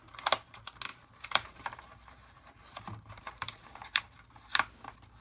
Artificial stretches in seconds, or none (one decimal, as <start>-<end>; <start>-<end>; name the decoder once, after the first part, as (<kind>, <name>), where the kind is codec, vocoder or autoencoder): 0.9-4.0 (vocoder, BigVGAN v2)